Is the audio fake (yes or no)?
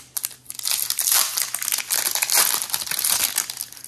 no